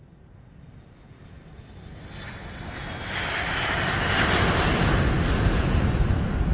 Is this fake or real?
real